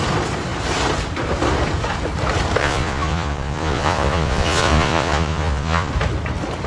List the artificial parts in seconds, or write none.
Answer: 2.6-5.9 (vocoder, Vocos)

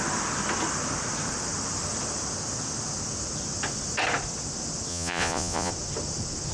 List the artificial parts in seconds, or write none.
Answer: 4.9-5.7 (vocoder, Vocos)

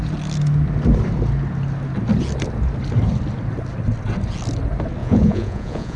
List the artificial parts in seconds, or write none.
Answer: 5.0-6.0 (vocoder, Vocos)

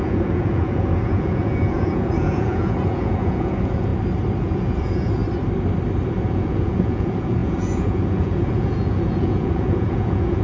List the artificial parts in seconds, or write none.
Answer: 0.0-3.9 (vocoder, Vocos); 4.4-5.2; 6.2-10.4

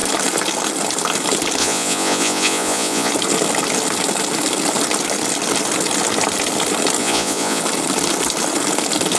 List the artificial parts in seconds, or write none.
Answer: 1.6-3.1 (vocoder, Vocos); 7.0-7.6

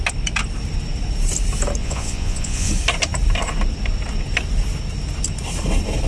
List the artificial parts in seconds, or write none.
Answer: 1.8-2.7 (vocoder, Vocos)